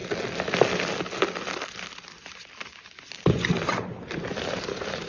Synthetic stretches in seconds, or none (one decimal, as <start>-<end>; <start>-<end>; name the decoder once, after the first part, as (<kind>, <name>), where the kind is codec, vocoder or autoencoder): 3.1-5.1 (vocoder, BigVGAN v2)

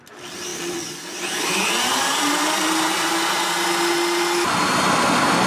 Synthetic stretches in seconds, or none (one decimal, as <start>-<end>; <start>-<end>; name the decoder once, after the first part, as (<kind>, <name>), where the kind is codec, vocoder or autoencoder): 0.5-3.1 (vocoder, BigVGAN v2)

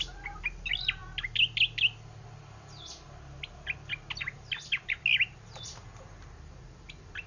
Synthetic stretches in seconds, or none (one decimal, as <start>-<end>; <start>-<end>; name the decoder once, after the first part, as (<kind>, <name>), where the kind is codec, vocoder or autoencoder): none

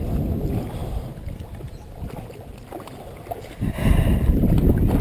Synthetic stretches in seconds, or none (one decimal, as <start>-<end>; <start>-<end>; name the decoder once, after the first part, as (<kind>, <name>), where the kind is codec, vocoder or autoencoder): none

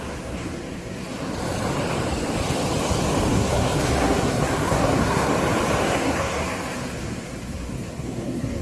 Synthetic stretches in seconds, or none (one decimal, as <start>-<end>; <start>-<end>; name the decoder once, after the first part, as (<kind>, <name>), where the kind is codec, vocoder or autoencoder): 0.0-1.3 (codec, SNAC); 3.3-5.3; 5.8-8.6

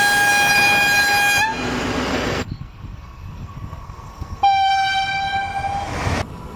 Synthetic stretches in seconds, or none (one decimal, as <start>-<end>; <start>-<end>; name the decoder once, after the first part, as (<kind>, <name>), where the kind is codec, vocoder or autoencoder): 2.1-4.7 (codec, SNAC)

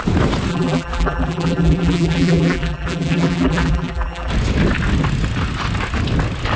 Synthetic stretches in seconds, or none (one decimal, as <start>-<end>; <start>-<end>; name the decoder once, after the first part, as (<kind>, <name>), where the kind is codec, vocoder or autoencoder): 0.5-4.3 (vocoder, BigVGAN v2)

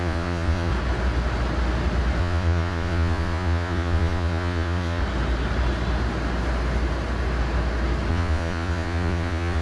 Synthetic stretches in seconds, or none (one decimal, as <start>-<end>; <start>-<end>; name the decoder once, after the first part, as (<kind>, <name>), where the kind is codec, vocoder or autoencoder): 0.0-0.7 (vocoder, Vocos); 2.2-5.0; 8.1-9.6